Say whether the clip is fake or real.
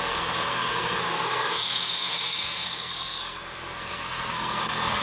fake